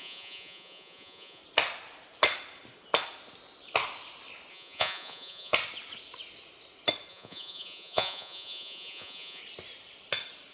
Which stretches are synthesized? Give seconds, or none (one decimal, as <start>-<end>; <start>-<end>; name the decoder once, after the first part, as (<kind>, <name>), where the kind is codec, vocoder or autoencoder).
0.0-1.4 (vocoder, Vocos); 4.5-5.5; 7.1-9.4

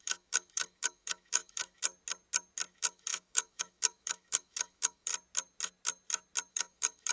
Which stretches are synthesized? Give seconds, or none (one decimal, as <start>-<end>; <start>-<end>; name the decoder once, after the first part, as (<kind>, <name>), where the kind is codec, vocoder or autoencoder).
0.0-1.9 (autoencoder, DAC-VAE); 2.7-5.1; 6.5-7.1

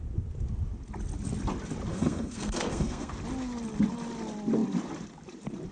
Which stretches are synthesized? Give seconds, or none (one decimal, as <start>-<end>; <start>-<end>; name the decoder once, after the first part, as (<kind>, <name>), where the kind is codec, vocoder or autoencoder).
1.9-3.1 (codec, SNAC)

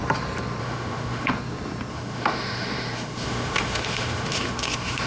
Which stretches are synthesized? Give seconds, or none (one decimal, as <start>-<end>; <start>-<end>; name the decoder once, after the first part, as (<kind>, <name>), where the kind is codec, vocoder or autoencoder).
0.6-1.3 (autoencoder, DAC-VAE); 1.9-5.1